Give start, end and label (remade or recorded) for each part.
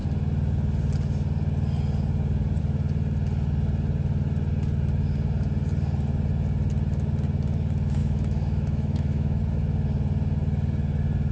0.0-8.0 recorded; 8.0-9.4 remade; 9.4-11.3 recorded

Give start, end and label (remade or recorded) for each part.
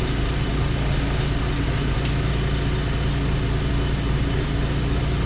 0.0-5.3 recorded